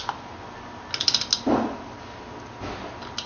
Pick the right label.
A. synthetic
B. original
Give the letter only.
B